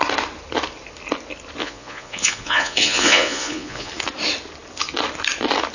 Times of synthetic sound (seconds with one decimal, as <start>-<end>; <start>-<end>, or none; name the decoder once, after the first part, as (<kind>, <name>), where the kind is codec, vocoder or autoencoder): 1.6-3.9 (vocoder, Vocos)